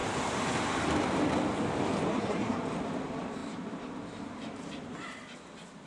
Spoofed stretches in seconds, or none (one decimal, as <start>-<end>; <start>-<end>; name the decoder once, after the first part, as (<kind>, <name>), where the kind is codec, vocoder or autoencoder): 2.1-2.6 (codec, SNAC)